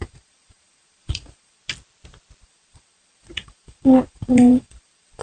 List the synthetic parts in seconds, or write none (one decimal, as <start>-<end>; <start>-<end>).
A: 0.0-1.6; 2.4-5.2